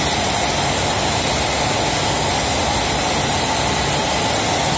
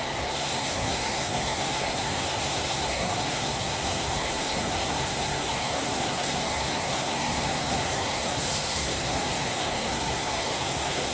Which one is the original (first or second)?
first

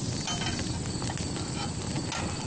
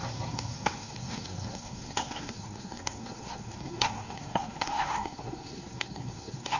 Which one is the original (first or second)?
first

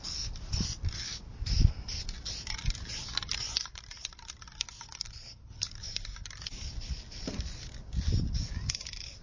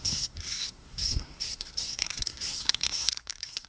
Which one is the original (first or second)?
first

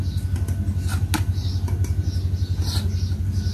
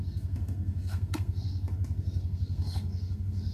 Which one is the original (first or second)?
first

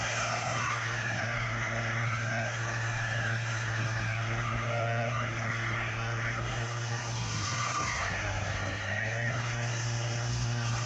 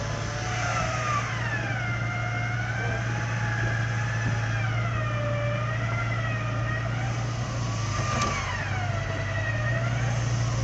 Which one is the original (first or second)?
second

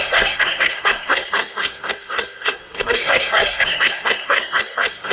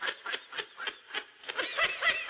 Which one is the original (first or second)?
second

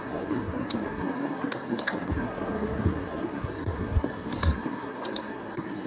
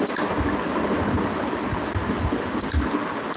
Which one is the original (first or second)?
second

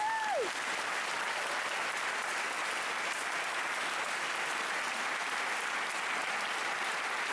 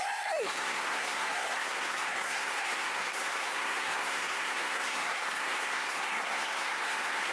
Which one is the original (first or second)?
first